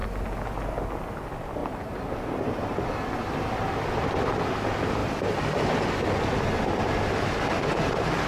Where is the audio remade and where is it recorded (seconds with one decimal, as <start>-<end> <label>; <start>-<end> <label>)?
0.0-1.6 recorded; 1.6-2.8 remade; 2.8-5.0 recorded; 5.0-5.7 remade; 5.7-8.3 recorded